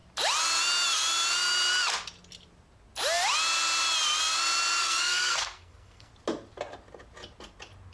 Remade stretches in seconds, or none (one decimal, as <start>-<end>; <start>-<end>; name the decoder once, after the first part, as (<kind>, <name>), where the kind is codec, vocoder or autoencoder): 4.8-6.1 (codec, SNAC)